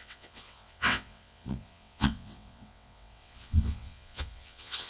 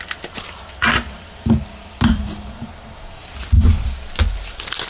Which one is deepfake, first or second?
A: first